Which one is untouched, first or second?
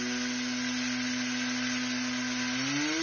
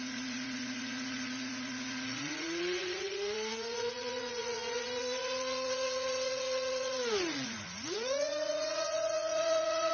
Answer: first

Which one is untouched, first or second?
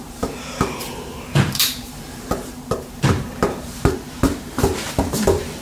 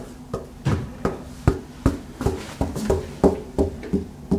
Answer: second